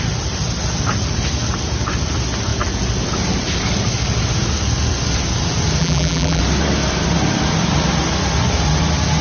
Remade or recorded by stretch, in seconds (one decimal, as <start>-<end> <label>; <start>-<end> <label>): 0.0-5.8 recorded; 5.8-6.4 remade; 6.4-9.2 recorded